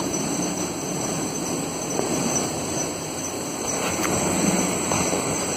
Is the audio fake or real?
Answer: fake